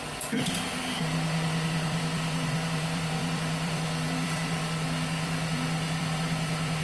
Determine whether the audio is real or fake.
fake